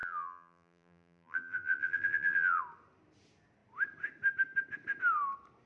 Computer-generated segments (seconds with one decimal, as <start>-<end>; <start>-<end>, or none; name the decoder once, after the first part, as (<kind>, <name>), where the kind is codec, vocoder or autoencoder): 0.0-2.6 (vocoder, BigVGAN v2)